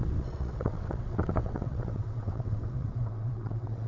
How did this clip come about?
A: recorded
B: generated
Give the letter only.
B